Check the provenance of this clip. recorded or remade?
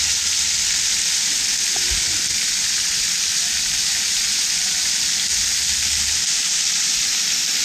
recorded